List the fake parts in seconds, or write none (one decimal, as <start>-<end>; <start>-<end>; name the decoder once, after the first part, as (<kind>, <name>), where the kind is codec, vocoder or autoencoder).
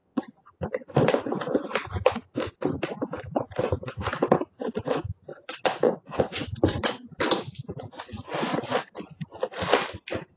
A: 0.0-0.5 (vocoder, Vocos); 5.3-7.2